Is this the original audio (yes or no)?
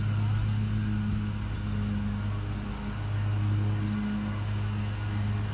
yes